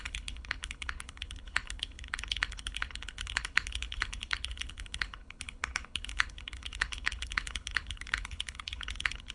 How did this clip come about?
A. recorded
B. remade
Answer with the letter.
B